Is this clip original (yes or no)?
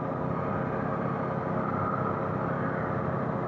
yes